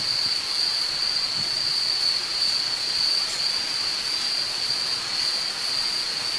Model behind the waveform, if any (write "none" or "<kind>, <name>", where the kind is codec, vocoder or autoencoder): vocoder, Vocos